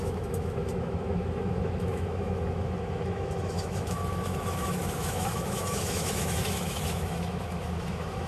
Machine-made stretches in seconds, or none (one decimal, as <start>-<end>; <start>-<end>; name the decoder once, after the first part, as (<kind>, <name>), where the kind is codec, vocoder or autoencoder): 0.0-8.3 (autoencoder, DAC-VAE)